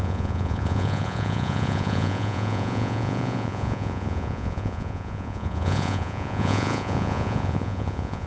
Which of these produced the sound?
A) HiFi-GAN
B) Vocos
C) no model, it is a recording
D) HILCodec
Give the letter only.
B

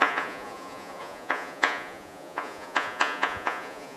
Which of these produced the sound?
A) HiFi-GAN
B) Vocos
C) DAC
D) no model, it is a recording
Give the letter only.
B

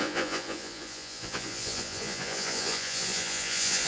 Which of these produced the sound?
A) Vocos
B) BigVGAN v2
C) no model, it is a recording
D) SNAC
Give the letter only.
A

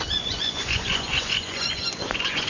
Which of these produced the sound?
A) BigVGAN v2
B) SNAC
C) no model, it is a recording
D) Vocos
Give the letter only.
D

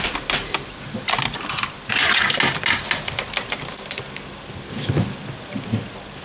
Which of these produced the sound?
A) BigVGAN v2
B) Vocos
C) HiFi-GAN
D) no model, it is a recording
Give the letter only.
D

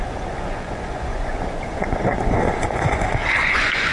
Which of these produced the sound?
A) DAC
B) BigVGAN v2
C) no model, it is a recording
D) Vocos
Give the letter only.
D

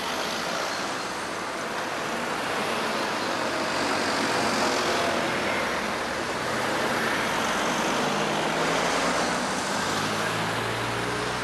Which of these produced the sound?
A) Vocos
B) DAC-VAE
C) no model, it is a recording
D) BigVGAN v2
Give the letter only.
C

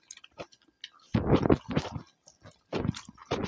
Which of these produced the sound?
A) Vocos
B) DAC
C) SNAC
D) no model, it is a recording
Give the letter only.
D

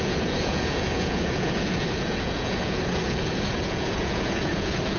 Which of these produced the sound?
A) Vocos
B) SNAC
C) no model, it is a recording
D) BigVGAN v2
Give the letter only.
A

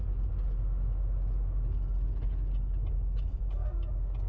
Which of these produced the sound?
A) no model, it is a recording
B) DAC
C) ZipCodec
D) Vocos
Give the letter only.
A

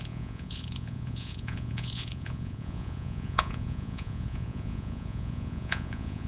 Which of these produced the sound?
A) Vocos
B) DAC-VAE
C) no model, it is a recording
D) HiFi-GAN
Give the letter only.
A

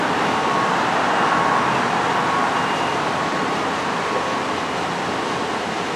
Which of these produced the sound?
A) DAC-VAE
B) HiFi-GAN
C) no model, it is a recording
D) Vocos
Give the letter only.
C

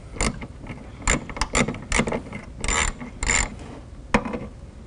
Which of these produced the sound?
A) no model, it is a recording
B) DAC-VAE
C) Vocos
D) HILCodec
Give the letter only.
A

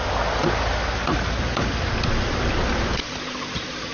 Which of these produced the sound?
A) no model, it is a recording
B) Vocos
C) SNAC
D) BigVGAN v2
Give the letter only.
A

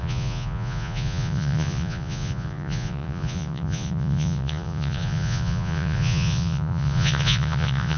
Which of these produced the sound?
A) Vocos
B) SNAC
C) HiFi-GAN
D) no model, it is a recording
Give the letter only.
A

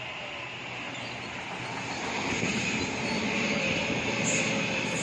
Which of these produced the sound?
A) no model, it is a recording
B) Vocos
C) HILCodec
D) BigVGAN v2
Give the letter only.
A